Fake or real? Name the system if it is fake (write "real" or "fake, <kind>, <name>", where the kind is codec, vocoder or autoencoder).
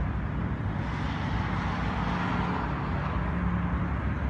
real